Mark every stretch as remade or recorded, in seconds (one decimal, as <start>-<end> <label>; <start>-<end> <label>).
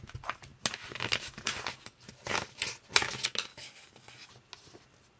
0.0-3.5 recorded; 3.5-4.3 remade; 4.3-5.2 recorded